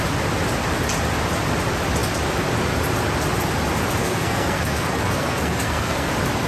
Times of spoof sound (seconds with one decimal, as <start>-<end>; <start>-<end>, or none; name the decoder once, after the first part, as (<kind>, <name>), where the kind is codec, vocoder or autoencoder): 4.0-6.1 (codec, SNAC)